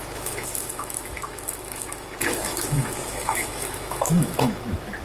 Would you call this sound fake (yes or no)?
yes